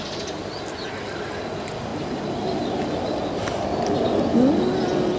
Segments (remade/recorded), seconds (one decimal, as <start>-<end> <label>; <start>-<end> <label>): 0.0-5.2 recorded